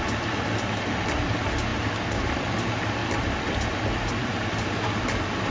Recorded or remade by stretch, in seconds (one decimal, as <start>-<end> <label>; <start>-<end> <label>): 0.0-5.5 remade